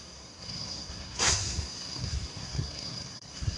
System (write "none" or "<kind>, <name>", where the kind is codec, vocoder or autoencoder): codec, SNAC